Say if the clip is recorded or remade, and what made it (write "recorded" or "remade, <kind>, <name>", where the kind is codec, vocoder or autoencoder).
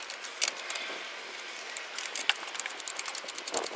recorded